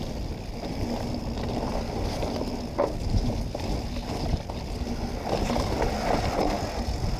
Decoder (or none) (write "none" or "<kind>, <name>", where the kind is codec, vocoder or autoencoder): none